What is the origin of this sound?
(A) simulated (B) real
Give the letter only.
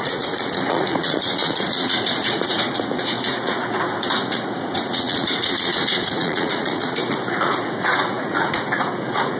A